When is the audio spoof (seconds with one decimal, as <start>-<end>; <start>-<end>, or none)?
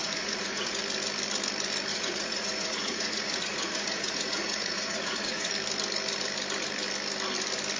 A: 0.0-0.8; 1.9-5.5